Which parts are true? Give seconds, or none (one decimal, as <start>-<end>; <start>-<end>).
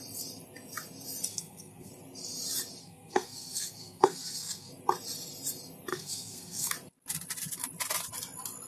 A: 0.0-1.3; 1.9-2.8; 4.7-5.9; 6.7-8.7